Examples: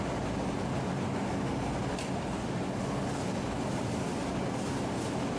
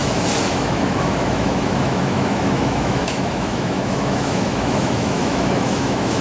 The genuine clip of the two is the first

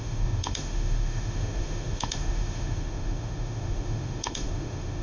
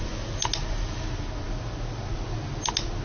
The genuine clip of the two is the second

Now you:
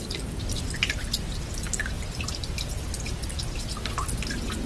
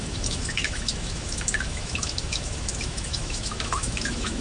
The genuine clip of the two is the first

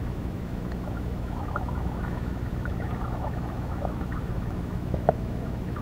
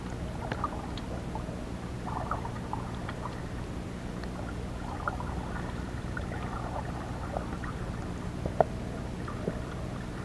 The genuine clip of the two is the second